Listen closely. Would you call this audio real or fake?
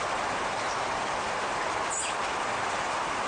real